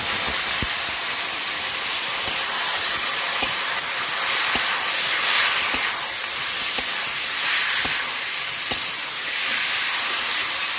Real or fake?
real